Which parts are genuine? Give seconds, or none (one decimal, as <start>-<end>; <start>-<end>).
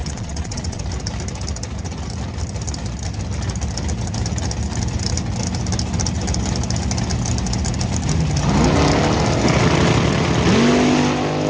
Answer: 0.8-11.5